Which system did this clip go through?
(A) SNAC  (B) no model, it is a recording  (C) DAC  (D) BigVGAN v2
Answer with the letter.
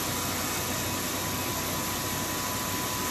B